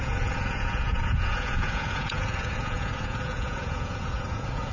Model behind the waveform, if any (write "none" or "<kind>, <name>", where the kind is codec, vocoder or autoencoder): vocoder, Vocos